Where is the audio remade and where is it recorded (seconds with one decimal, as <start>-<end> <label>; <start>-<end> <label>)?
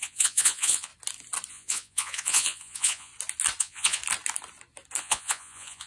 0.0-0.9 remade; 0.9-1.5 recorded; 1.5-3.1 remade; 3.1-3.6 recorded; 3.6-4.0 remade; 4.0-5.0 recorded; 5.0-5.9 remade